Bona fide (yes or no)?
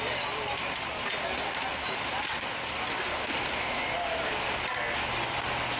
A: yes